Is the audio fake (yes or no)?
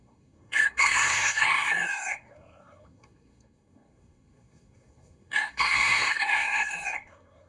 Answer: yes